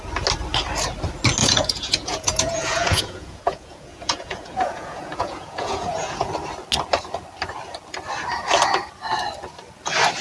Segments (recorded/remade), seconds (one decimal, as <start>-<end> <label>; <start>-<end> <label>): 0.0-1.4 recorded; 1.4-6.3 remade; 6.3-10.2 recorded